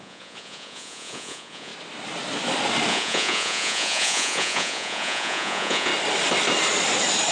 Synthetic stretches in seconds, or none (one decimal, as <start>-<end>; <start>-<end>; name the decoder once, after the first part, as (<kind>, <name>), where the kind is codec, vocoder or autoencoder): 0.0-1.7 (vocoder, Vocos); 2.9-5.9